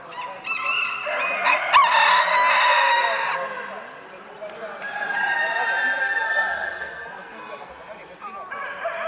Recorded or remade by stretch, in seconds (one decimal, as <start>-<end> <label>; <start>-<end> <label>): 0.0-6.0 recorded; 6.0-7.7 remade; 7.7-9.1 recorded